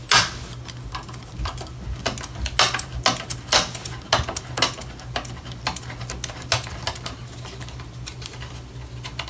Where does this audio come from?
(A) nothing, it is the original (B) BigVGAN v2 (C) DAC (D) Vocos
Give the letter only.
A